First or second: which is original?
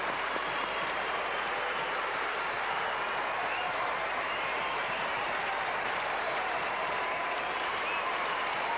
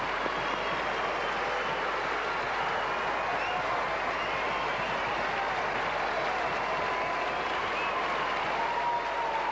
second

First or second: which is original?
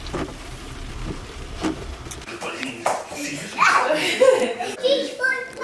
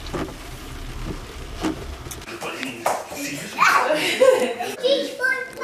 second